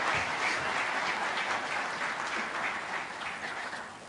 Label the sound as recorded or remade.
recorded